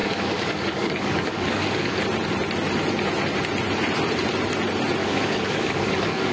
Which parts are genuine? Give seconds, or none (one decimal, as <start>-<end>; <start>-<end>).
2.0-5.0